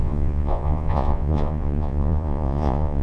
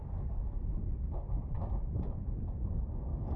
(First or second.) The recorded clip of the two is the second